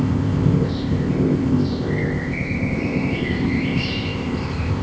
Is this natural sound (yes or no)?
no